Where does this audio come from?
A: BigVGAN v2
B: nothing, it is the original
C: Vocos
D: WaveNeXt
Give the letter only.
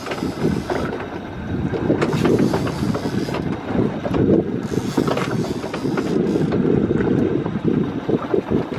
B